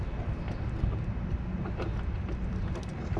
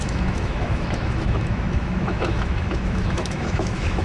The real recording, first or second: first